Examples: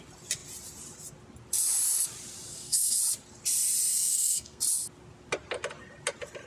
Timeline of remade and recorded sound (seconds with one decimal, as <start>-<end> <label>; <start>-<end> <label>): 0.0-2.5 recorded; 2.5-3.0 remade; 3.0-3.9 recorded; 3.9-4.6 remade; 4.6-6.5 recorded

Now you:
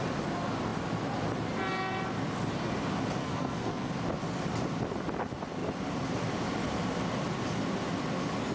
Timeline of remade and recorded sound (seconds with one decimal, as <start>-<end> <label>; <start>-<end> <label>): 0.0-3.2 recorded; 3.2-3.9 remade; 3.9-8.5 recorded

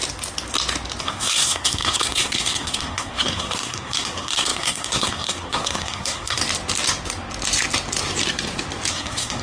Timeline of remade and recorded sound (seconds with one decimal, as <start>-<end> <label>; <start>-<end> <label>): 0.0-1.0 recorded; 1.0-6.4 remade; 6.4-8.9 recorded; 8.9-9.4 remade